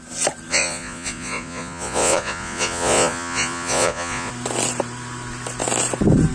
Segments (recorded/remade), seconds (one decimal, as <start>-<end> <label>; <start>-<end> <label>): 0.0-0.5 recorded; 0.5-4.3 remade; 4.3-6.3 recorded